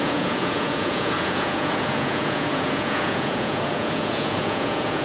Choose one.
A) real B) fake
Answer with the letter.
B